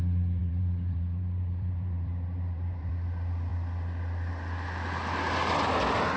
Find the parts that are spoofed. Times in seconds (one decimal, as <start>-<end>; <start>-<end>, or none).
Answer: 0.4-2.9